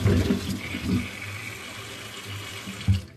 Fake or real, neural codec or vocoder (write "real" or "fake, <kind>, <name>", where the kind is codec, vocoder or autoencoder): real